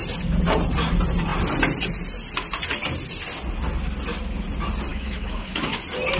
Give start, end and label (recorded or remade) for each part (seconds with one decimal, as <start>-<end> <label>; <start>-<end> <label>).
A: 0.0-4.9 recorded; 4.9-5.8 remade; 5.8-6.2 recorded